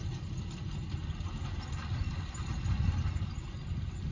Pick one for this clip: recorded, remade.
recorded